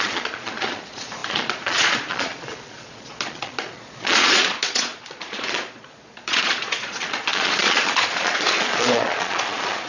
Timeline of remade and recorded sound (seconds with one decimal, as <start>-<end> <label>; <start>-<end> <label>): 0.0-9.9 remade